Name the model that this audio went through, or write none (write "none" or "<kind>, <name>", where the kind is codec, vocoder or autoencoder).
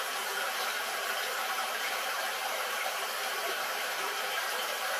vocoder, BigVGAN v2